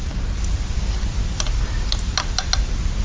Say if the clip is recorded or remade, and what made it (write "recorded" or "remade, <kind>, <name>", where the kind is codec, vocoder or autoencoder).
recorded